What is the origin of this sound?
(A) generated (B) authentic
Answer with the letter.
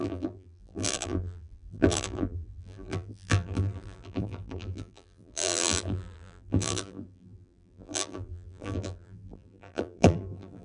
A